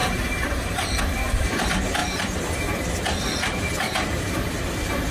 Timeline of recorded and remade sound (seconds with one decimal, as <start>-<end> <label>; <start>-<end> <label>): 0.0-1.0 recorded; 1.0-5.1 remade